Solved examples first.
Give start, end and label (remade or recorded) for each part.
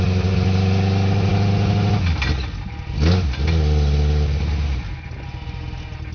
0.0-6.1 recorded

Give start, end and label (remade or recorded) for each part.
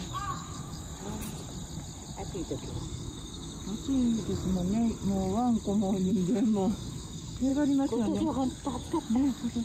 0.0-0.9 remade; 0.9-2.7 recorded; 2.7-4.4 remade; 4.4-6.1 recorded; 6.1-7.5 remade; 7.5-8.2 recorded; 8.2-9.6 remade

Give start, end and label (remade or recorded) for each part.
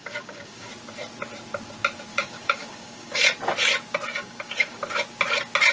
0.0-0.7 remade; 0.7-2.1 recorded; 2.1-3.2 remade; 3.2-4.1 recorded; 4.1-4.8 remade; 4.8-5.7 recorded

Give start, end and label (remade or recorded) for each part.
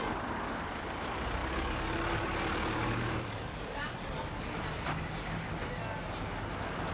0.0-1.4 recorded; 1.4-5.5 remade; 5.5-6.9 recorded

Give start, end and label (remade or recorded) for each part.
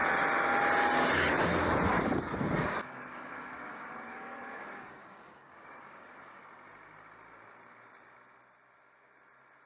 0.0-1.9 recorded; 1.9-6.4 remade; 6.4-9.7 recorded